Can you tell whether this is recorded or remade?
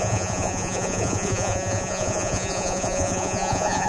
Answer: remade